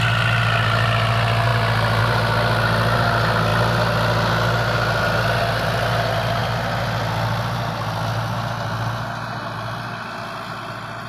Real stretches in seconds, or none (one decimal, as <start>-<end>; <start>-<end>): 0.0-11.1